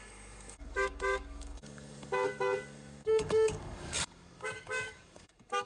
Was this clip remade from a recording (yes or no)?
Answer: yes